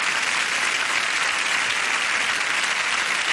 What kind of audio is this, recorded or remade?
recorded